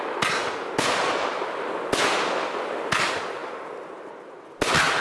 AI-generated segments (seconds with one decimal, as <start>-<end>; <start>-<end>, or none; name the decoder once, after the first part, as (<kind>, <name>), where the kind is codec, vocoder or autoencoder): none